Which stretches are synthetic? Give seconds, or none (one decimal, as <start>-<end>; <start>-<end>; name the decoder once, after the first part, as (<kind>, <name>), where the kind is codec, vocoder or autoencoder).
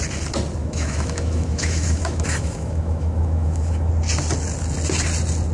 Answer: 0.6-3.9 (autoencoder, DAC-VAE)